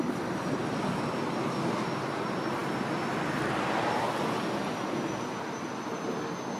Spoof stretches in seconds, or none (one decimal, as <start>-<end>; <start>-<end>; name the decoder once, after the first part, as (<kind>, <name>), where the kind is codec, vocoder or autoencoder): none